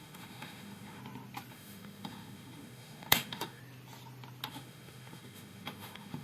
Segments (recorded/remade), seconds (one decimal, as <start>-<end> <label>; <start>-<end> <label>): 0.0-1.0 remade; 1.0-1.5 recorded; 1.5-3.6 remade; 3.6-4.5 recorded; 4.5-6.2 remade